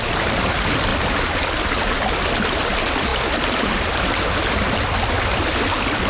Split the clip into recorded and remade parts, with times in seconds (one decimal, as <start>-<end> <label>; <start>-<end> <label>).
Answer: 0.0-6.1 recorded